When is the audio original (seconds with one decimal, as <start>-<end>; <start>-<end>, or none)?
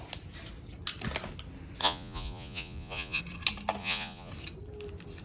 0.0-1.8; 3.2-3.8; 4.3-5.2